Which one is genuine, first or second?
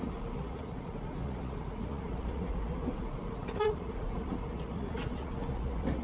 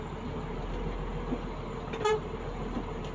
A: second